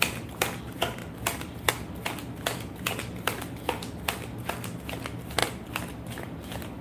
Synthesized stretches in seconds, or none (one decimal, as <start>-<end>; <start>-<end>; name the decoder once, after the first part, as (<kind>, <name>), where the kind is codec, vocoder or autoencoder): 5.4-6.1 (vocoder, BigVGAN v2)